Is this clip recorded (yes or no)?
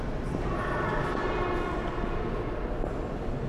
yes